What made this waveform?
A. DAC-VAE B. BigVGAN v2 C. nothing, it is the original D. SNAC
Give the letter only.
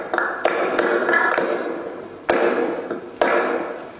C